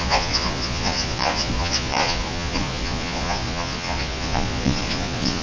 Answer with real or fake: fake